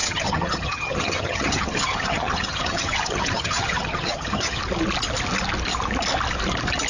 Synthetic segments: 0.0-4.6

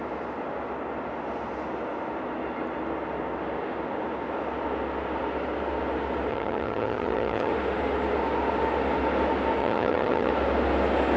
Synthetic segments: 6.3-7.5; 9.6-10.3

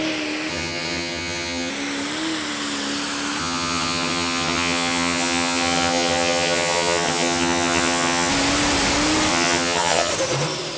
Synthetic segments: 0.5-1.7; 3.4-8.3; 9.3-10.1

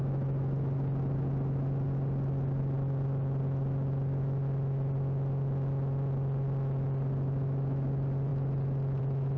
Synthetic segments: none

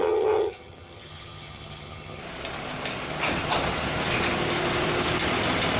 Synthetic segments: 0.0-2.2